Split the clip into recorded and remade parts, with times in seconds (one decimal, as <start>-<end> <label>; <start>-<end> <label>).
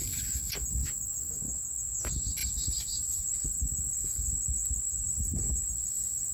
0.0-2.4 recorded; 2.4-5.6 remade; 5.6-6.3 recorded